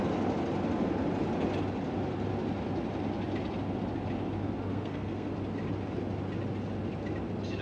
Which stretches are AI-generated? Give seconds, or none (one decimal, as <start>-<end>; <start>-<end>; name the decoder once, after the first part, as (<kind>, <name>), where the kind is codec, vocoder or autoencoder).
4.7-5.3 (codec, SNAC)